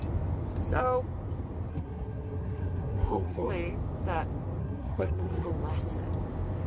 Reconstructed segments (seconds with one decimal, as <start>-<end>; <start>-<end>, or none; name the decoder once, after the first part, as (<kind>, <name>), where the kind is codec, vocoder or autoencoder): 1.7-3.5 (codec, SNAC); 4.6-5.5